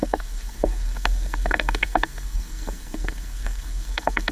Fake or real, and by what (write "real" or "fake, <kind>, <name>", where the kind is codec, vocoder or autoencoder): fake, codec, SNAC